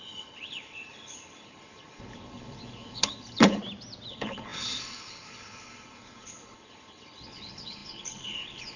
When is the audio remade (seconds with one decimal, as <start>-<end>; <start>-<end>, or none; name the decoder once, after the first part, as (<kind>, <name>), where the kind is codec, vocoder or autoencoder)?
0.0-3.6 (codec, HILCodec); 4.1-8.8